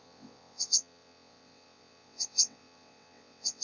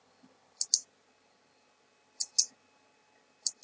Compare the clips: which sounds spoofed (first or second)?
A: first